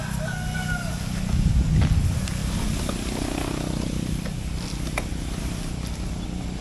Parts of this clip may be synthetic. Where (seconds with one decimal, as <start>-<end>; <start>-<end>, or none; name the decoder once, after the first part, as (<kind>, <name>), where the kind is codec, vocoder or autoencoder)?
none